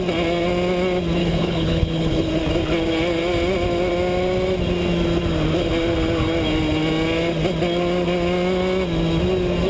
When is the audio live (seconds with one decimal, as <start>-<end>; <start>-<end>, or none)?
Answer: 0.0-1.2; 2.3-9.7